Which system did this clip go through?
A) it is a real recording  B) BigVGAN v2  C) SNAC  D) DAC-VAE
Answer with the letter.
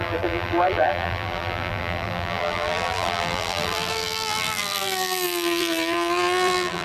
B